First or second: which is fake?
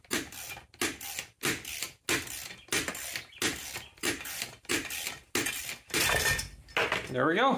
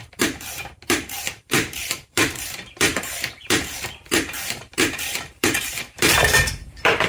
second